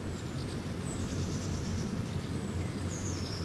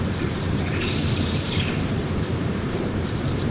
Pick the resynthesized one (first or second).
second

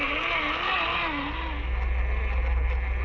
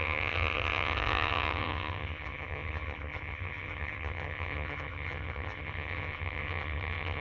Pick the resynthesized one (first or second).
second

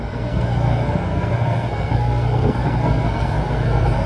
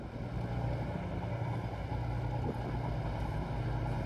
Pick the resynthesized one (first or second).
first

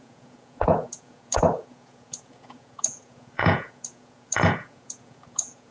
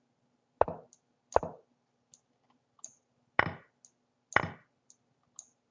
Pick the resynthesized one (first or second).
first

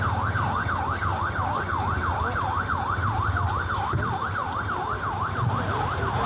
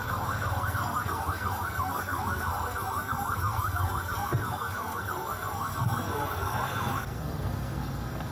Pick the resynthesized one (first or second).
second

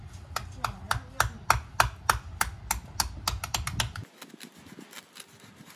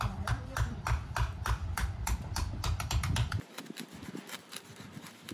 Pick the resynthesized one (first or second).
second